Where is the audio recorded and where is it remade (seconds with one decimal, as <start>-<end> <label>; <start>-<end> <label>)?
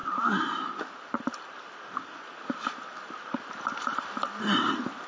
0.0-5.1 recorded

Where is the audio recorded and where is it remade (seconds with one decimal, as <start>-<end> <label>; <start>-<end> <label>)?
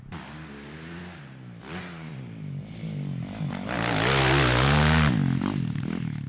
0.0-6.3 recorded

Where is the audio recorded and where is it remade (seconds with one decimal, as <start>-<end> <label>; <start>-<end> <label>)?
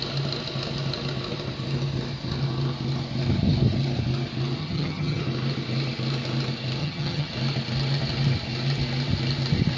0.0-4.6 recorded; 4.6-5.2 remade; 5.2-6.8 recorded; 6.8-7.3 remade; 7.3-9.8 recorded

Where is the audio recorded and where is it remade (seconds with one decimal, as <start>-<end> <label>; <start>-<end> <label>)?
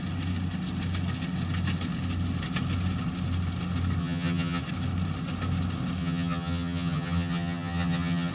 0.0-4.0 recorded; 4.0-4.6 remade; 4.6-6.0 recorded; 6.0-8.3 remade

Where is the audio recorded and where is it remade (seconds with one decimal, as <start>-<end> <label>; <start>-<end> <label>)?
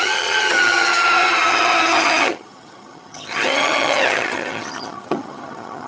0.0-5.9 remade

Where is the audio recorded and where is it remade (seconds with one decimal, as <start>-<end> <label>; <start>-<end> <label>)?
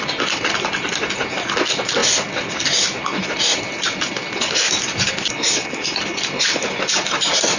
0.0-7.6 recorded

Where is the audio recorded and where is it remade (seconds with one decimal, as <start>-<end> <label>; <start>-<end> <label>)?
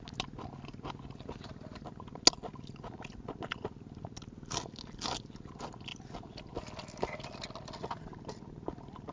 0.0-9.1 recorded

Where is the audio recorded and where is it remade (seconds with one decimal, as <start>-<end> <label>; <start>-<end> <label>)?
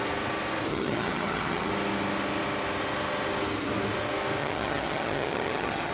0.0-0.7 recorded; 0.7-1.7 remade; 1.7-4.4 recorded; 4.4-5.9 remade